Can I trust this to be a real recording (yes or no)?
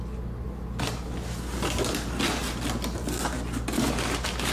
yes